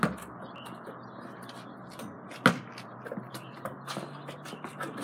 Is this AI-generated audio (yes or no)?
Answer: no